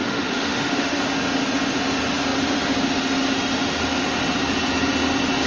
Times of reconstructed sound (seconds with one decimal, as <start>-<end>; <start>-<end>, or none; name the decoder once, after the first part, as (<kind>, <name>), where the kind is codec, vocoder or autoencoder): 0.0-1.0 (autoencoder, DAC-VAE)